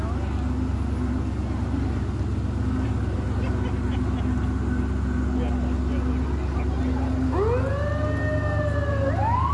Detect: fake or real real